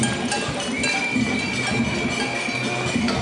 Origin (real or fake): real